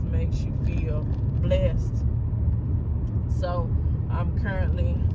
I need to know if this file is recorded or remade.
recorded